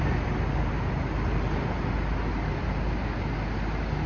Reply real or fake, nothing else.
real